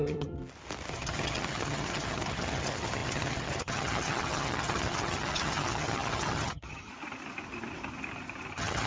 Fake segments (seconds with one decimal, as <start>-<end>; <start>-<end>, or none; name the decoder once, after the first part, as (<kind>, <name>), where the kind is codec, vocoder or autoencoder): 0.0-0.4 (vocoder, HiFi-GAN); 0.9-6.9; 8.5-8.9